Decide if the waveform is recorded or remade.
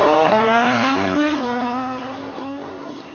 remade